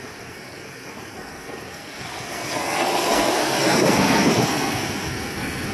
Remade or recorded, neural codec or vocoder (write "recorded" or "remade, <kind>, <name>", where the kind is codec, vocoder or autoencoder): remade, codec, SNAC